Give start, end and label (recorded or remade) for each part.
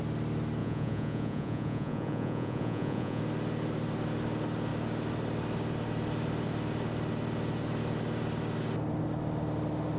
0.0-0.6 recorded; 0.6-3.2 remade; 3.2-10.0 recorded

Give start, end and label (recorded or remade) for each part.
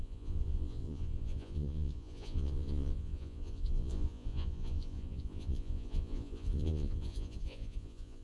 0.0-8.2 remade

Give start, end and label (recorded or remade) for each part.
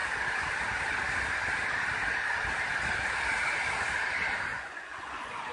0.0-4.5 recorded; 4.5-5.5 remade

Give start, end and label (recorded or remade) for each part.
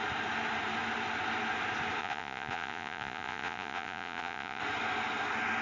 0.0-2.0 recorded; 2.0-4.6 remade; 4.6-5.6 recorded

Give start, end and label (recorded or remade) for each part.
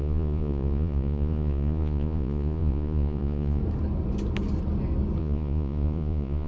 0.0-3.6 remade; 3.6-5.2 recorded; 5.2-6.5 remade